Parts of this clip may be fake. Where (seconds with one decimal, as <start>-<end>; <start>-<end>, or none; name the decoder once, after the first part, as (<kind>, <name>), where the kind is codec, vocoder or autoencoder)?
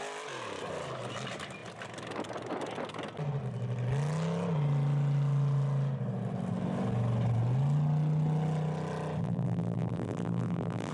9.2-10.9 (vocoder, BigVGAN v2)